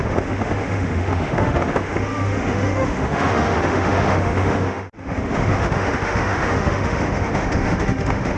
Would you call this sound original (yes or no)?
no